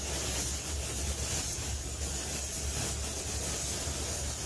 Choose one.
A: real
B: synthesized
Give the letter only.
A